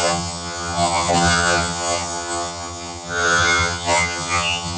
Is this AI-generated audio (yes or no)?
yes